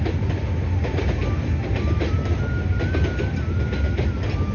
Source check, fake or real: real